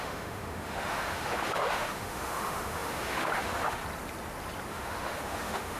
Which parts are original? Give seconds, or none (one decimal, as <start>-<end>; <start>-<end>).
3.8-4.7